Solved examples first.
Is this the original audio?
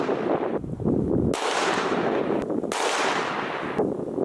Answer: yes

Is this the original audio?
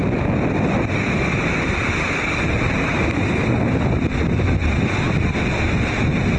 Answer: yes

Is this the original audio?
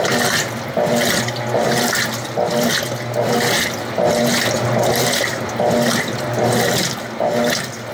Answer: yes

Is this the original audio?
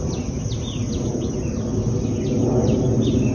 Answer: yes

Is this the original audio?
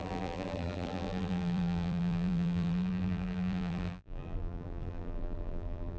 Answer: no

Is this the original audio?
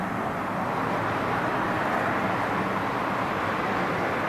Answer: yes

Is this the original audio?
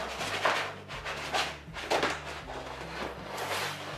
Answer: yes